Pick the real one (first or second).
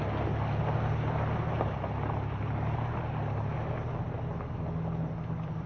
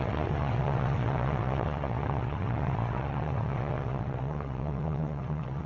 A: first